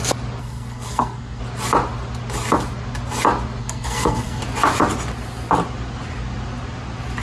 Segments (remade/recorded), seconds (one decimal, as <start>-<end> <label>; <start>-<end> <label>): 0.0-0.4 recorded; 0.4-1.4 remade; 1.4-3.6 recorded; 3.6-4.4 remade; 4.4-7.2 recorded